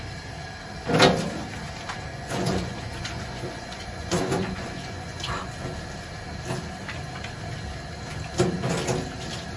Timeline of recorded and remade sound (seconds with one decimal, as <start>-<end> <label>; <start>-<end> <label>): 0.0-2.1 recorded; 2.1-5.6 remade; 5.6-9.6 recorded

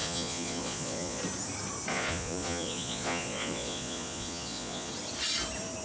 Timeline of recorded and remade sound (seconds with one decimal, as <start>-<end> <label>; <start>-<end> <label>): 0.0-1.2 remade; 1.2-1.9 recorded; 1.9-4.9 remade; 4.9-5.8 recorded

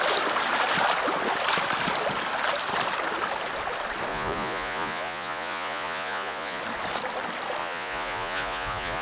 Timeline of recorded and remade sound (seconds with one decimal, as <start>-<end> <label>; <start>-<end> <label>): 0.0-4.1 recorded; 4.1-6.6 remade; 6.6-7.6 recorded; 7.6-9.0 remade

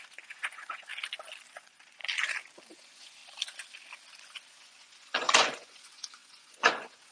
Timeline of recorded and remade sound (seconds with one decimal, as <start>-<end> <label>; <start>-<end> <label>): 0.0-0.9 remade; 0.9-1.5 recorded; 1.5-2.0 remade; 2.0-2.7 recorded; 2.7-3.2 remade; 3.2-4.5 recorded; 4.5-7.1 remade

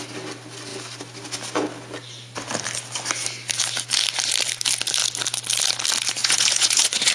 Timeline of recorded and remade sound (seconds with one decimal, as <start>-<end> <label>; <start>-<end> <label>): 0.0-6.2 recorded; 6.2-7.1 remade